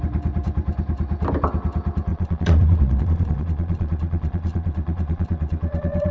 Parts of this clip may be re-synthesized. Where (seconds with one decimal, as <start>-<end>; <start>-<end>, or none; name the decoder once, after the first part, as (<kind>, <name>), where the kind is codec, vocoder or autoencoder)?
2.1-6.1 (vocoder, Vocos)